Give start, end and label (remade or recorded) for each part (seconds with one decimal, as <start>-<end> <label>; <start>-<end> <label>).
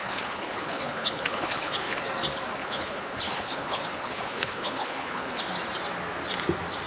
0.0-2.0 remade; 2.0-2.6 recorded; 2.6-5.4 remade; 5.4-6.9 recorded